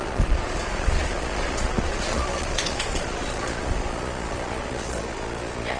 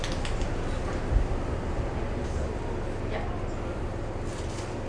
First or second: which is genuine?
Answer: second